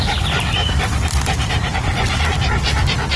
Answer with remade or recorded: recorded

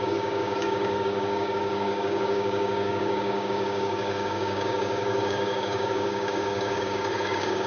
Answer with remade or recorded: remade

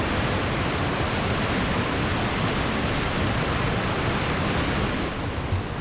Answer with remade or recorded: recorded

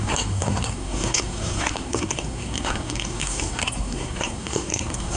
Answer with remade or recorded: remade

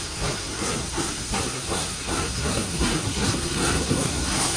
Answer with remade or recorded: remade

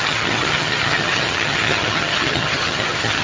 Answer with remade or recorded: remade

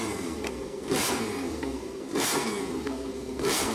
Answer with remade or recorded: remade